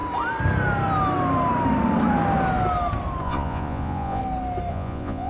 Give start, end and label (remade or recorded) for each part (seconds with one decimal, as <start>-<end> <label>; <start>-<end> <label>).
0.0-3.2 recorded; 3.2-4.2 remade; 4.2-4.7 recorded; 4.7-5.3 remade